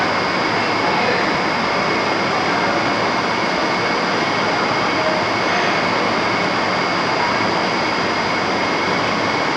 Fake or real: real